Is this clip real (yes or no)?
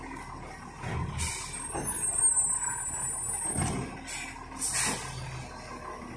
yes